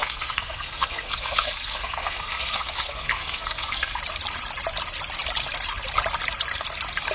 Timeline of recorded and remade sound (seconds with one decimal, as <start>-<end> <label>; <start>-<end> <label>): 0.0-4.0 remade; 4.0-7.1 recorded